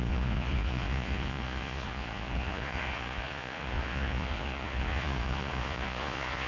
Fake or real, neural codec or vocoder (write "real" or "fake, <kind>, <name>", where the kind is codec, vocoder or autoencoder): fake, vocoder, Vocos